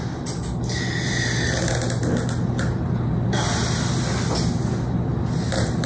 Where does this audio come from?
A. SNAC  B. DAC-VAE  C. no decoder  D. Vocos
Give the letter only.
C